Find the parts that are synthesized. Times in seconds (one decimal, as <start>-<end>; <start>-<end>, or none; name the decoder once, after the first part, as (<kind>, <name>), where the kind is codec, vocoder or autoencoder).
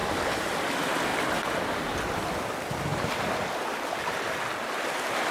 none